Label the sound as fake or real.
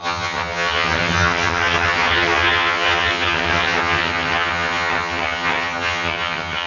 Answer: fake